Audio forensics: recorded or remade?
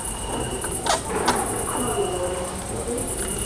recorded